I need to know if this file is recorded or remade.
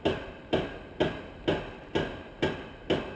recorded